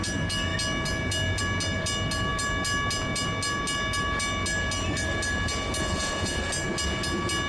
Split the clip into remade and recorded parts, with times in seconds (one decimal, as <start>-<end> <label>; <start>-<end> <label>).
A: 0.0-5.8 recorded; 5.8-6.4 remade; 6.4-7.5 recorded